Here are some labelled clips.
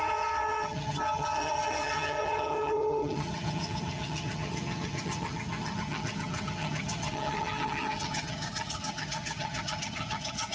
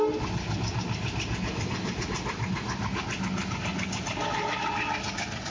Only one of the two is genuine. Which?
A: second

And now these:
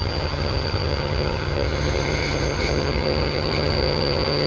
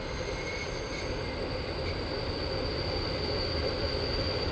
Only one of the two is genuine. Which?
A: second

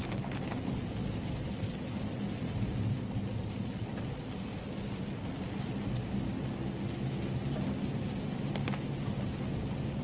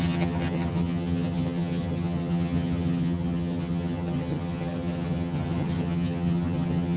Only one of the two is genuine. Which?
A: first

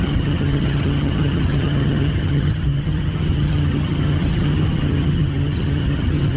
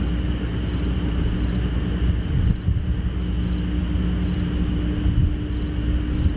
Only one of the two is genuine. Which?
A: second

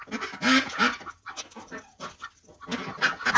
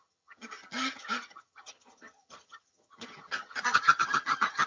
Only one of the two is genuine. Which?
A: first